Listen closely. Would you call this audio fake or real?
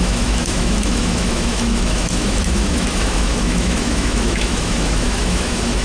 fake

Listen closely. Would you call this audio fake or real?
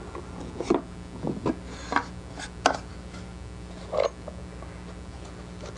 real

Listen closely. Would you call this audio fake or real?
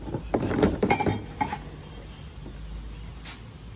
real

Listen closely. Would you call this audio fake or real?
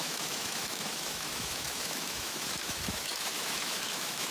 fake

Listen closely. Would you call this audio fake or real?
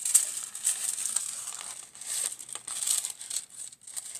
real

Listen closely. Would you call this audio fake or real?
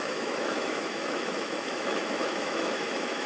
fake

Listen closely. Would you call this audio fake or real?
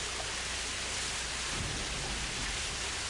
real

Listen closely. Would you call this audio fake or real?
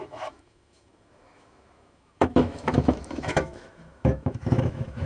fake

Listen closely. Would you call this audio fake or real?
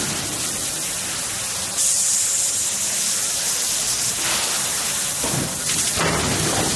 real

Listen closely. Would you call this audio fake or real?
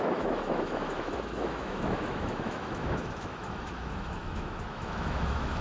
fake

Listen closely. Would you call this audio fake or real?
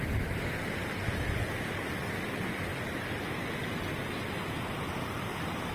real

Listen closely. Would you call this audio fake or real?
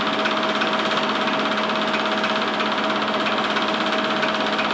real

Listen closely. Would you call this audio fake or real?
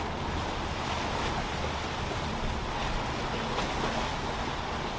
real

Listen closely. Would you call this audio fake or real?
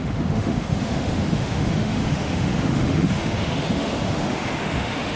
fake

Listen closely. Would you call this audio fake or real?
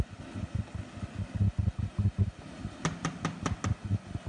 real